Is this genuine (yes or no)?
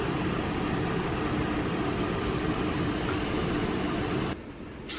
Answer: yes